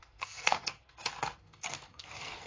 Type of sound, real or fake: fake